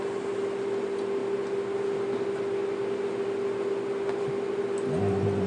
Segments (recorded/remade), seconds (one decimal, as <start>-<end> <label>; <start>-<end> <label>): 0.0-5.5 recorded